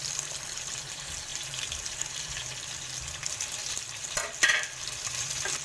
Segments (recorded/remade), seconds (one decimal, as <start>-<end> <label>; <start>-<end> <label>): 0.0-1.3 recorded; 1.3-2.4 remade; 2.4-3.6 recorded; 3.6-4.2 remade; 4.2-5.6 recorded